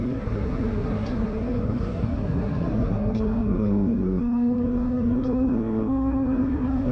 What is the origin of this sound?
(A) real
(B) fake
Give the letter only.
B